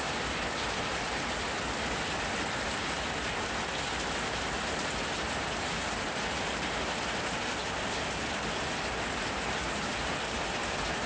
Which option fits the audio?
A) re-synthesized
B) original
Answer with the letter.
B